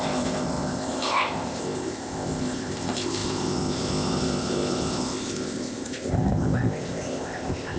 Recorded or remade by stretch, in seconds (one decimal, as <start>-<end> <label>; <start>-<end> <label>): 0.0-7.8 remade